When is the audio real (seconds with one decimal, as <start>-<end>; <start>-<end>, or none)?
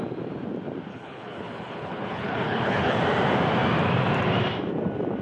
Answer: 0.0-0.9; 3.0-5.2